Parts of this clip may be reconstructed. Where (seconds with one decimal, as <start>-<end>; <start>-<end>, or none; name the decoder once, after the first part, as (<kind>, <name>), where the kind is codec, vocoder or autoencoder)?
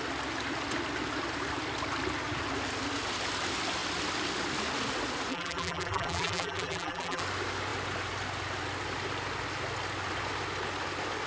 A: 5.3-7.2 (vocoder, BigVGAN v2)